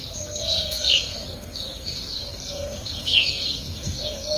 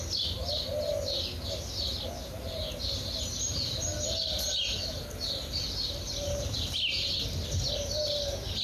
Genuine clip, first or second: second